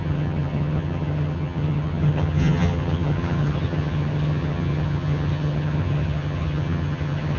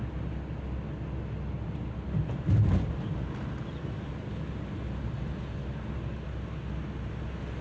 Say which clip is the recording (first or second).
second